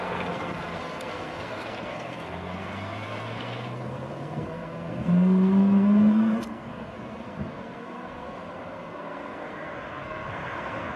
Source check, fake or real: fake